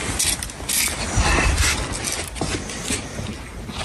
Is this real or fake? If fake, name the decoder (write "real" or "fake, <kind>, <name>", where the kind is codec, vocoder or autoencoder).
real